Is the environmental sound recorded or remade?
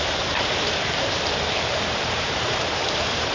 remade